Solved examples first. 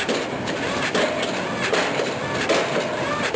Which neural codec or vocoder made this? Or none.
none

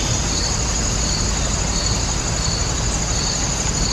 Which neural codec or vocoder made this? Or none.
none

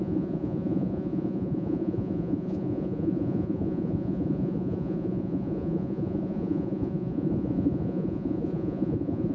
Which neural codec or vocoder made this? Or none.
vocoder, Vocos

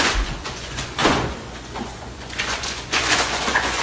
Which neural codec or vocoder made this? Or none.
vocoder, Vocos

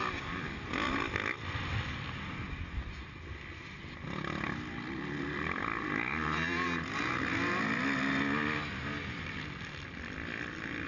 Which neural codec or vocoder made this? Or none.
none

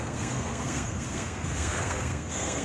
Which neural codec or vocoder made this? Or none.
codec, SNAC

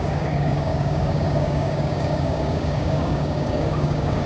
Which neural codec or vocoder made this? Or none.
codec, DAC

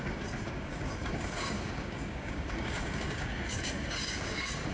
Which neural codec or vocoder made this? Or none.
codec, DAC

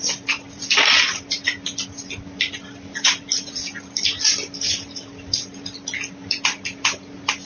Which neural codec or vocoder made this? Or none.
none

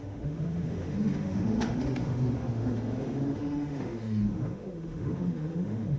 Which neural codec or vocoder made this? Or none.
autoencoder, DAC-VAE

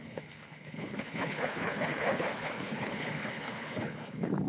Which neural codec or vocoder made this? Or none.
codec, HILCodec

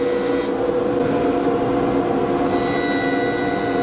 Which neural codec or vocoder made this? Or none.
none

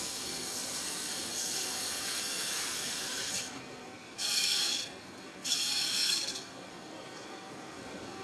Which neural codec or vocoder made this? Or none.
codec, SNAC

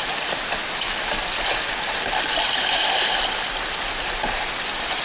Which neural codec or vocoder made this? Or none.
none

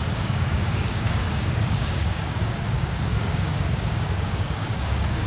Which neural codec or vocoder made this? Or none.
codec, DAC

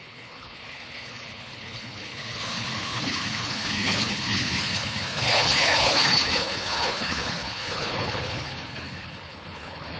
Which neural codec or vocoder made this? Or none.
codec, HILCodec